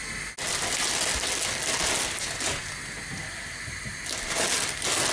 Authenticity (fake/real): real